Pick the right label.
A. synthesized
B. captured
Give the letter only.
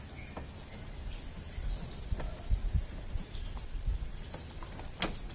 B